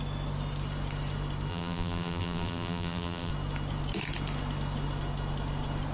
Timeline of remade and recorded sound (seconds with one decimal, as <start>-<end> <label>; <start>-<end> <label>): 0.0-1.5 recorded; 1.5-3.3 remade; 3.3-5.9 recorded